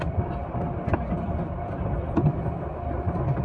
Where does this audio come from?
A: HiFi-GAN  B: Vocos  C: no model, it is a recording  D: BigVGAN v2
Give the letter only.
D